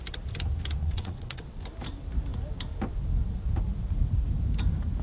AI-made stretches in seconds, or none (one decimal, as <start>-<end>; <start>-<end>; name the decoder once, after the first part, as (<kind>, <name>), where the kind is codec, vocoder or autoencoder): 0.8-1.6 (vocoder, WaveNeXt)

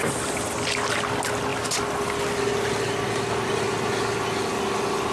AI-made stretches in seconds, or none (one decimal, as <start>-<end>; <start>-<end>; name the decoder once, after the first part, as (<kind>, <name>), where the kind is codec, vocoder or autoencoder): none

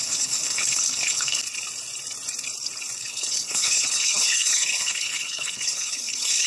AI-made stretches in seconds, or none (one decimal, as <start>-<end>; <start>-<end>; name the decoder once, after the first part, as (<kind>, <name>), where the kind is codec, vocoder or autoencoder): 0.0-1.4 (codec, HILCodec); 3.0-6.5

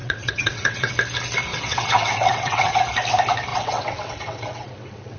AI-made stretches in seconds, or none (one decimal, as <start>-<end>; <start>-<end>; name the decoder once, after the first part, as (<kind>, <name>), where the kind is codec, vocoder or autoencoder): 0.0-0.9 (vocoder, WaveNeXt); 1.5-2.8; 3.5-5.2